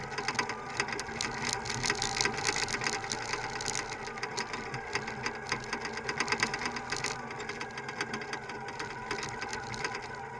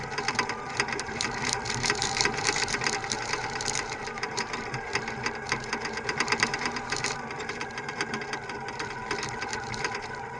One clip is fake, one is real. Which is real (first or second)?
first